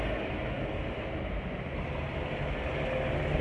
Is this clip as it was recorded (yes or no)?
yes